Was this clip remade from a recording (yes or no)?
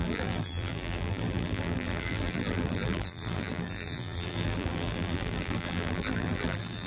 yes